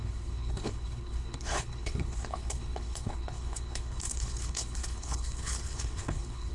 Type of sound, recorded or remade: remade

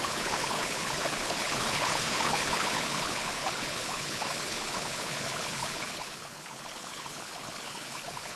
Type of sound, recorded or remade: remade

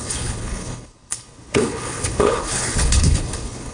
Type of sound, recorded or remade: remade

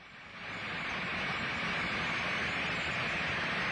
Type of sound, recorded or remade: recorded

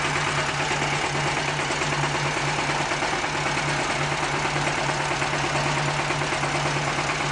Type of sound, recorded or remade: recorded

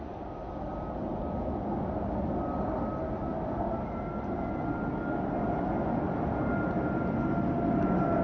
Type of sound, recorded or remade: recorded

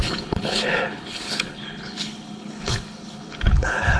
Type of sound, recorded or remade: remade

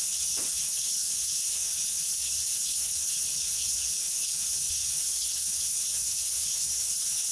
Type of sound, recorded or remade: remade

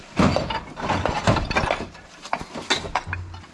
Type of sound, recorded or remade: recorded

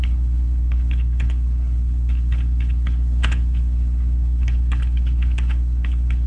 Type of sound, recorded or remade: remade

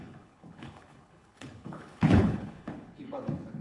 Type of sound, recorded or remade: remade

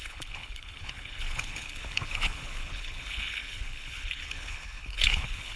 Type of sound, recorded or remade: remade